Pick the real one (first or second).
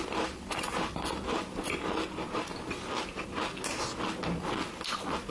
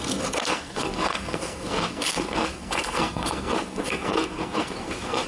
first